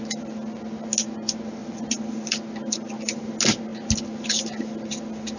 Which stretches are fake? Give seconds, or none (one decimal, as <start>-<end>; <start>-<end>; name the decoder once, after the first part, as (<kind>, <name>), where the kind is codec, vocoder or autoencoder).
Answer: none